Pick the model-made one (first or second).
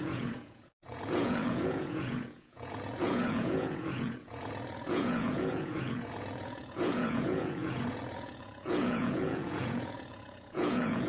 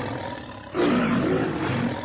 first